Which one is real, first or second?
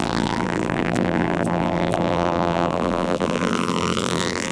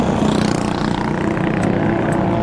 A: second